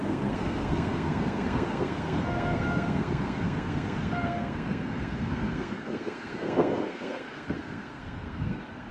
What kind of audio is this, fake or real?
fake